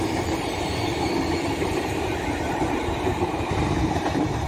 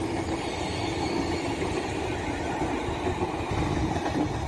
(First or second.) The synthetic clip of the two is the first